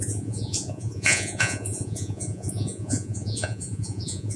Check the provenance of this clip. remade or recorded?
remade